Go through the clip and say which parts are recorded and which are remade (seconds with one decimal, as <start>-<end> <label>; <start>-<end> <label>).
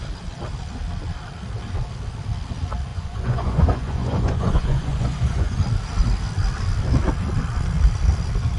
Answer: 0.0-2.9 recorded; 2.9-5.6 remade; 5.6-8.6 recorded